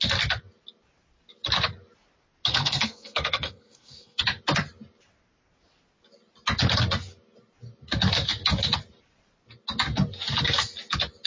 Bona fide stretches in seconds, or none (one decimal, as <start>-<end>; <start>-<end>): 0.0-2.5; 4.2-11.3